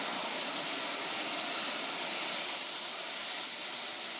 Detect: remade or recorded recorded